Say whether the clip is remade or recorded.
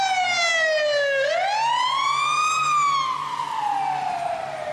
recorded